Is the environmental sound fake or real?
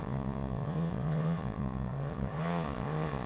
fake